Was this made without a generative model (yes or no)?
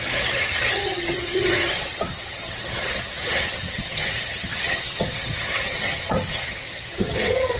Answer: no